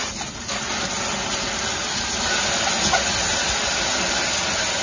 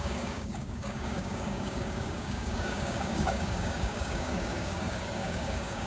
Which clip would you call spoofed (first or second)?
second